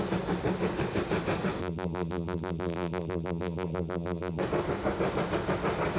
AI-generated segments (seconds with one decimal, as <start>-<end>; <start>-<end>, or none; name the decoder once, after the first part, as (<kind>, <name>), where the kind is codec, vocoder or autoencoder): 1.6-4.4 (vocoder, BigVGAN v2)